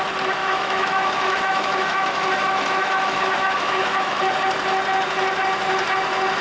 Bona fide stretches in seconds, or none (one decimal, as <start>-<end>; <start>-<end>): 0.0-0.4; 4.2-6.4

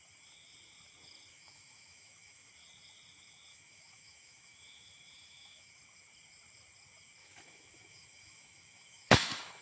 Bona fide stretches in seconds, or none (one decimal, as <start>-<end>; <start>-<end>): 0.0-1.3; 2.5-3.5; 5.7-7.2

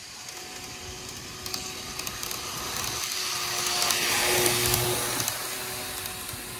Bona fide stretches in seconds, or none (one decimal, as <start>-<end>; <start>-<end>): 0.8-6.6

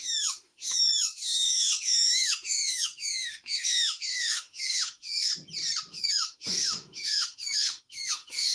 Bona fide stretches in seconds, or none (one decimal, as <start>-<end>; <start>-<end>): 5.3-5.9

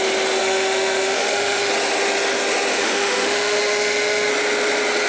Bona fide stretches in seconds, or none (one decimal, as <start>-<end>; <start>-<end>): 0.0-0.4; 1.7-2.7; 4.3-5.1

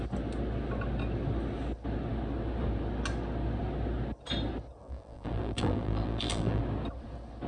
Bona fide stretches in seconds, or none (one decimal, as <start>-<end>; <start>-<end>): 0.0-4.8; 6.6-7.5